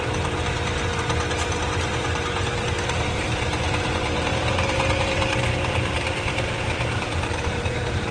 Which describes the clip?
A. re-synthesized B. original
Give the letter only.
A